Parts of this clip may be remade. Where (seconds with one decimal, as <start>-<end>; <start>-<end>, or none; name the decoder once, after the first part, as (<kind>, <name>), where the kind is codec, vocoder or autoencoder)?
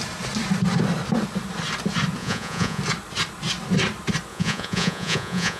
2.2-2.8 (vocoder, Vocos); 4.3-5.6